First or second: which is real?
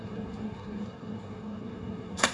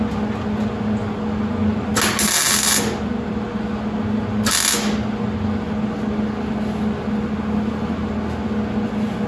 second